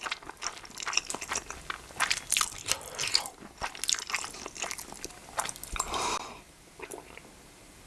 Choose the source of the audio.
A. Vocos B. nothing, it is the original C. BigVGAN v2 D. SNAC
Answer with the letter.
B